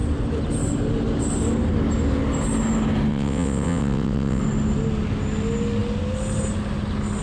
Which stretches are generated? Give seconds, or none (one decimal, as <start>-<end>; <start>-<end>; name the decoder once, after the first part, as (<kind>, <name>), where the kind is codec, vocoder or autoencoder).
3.1-4.4 (vocoder, WaveNeXt)